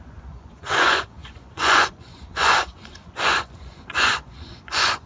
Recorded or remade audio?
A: remade